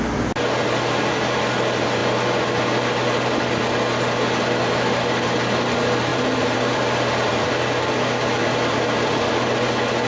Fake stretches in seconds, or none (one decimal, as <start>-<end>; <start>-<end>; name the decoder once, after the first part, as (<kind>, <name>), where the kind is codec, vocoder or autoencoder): 6.1-7.5 (vocoder, BigVGAN v2); 8.4-9.3